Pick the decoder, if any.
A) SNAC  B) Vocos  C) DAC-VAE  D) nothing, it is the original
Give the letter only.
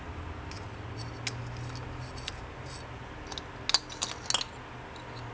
D